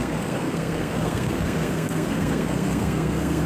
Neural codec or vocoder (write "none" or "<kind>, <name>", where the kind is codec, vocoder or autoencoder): codec, SNAC